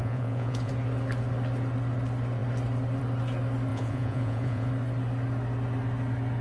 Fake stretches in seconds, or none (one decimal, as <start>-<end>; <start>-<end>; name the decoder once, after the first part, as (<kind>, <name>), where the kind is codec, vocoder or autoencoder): 0.0-0.7 (vocoder, Vocos); 3.7-4.7